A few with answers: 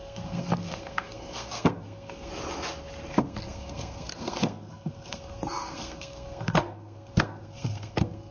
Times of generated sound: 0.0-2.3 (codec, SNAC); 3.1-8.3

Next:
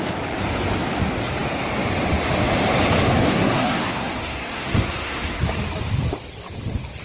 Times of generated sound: 3.3-5.4 (codec, SNAC)

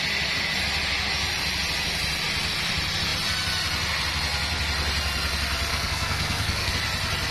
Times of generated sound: 5.7-6.7 (codec, SNAC)

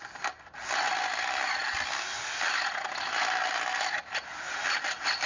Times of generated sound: none

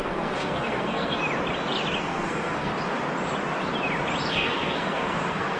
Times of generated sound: 0.0-1.2 (codec, SNAC); 2.0-2.7; 4.3-5.6